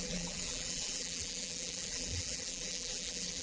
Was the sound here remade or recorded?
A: remade